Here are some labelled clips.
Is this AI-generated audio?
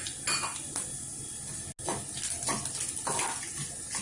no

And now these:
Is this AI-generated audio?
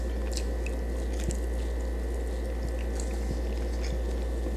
no